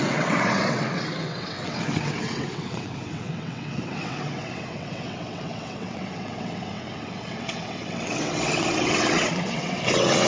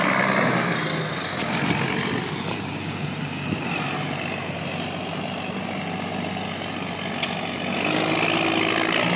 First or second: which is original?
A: second